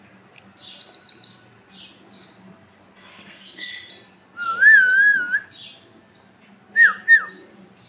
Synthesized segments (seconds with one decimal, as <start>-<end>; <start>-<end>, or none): 3.1-3.7